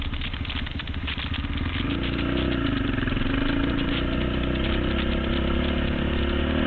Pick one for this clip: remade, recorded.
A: recorded